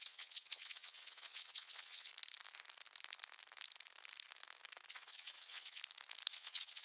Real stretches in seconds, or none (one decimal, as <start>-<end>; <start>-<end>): 2.1-4.9; 5.8-6.3